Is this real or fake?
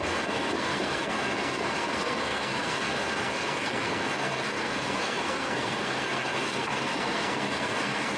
fake